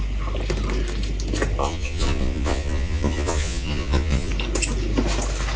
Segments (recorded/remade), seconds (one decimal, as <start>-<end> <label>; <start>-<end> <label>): 0.0-1.6 recorded; 1.6-4.3 remade; 4.3-5.6 recorded